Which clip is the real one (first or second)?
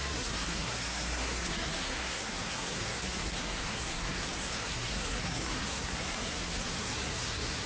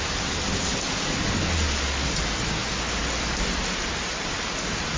second